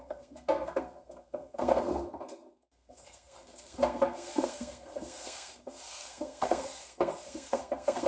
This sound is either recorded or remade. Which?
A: remade